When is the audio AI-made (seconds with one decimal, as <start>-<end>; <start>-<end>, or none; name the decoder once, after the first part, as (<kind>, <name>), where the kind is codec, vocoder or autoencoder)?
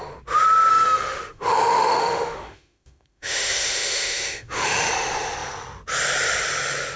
0.7-4.9 (autoencoder, DAC-VAE)